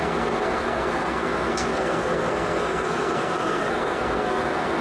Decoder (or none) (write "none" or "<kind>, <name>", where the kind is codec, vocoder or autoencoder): codec, SNAC